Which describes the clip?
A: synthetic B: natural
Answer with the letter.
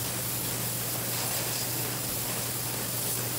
B